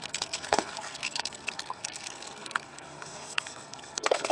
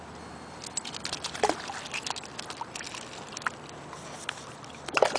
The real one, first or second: second